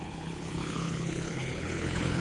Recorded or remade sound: remade